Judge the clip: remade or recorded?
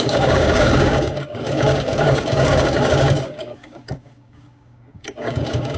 remade